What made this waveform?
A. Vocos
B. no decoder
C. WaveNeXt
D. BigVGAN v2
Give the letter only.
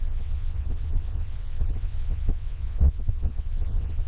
C